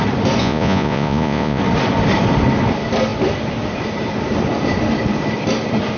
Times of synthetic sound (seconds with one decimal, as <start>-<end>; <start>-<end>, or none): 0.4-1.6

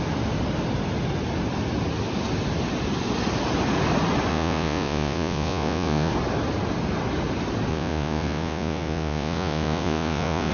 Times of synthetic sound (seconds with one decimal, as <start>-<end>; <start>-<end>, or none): 4.3-6.1; 7.7-10.5

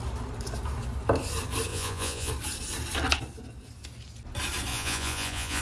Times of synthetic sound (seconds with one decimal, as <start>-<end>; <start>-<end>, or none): 1.7-2.3; 4.7-5.6

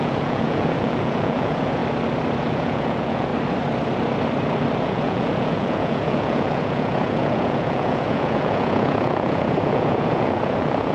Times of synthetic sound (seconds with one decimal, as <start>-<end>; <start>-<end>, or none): 0.0-1.8; 2.5-3.3; 4.8-10.9

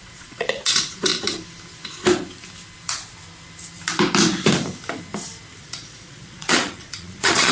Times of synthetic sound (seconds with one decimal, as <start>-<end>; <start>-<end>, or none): 0.0-1.1; 5.6-7.5